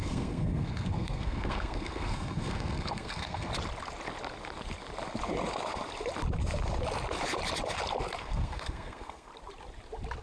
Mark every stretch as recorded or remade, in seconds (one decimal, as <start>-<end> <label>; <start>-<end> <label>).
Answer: 0.0-3.5 remade; 3.5-8.2 recorded; 8.2-9.3 remade; 9.3-10.2 recorded